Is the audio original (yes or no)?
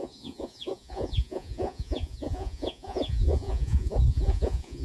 no